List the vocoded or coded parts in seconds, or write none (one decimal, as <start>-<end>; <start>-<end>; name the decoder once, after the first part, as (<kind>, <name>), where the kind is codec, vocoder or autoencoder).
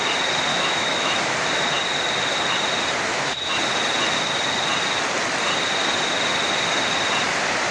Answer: 0.5-1.3 (autoencoder, DAC-VAE); 3.1-3.6